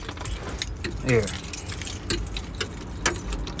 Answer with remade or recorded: recorded